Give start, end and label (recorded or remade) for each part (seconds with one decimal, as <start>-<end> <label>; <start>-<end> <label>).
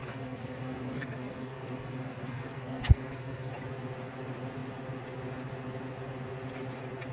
0.0-3.5 remade; 3.5-7.1 recorded